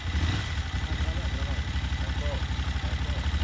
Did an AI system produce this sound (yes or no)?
no